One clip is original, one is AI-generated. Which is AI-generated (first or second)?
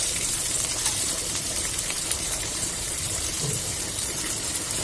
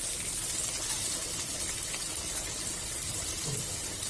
first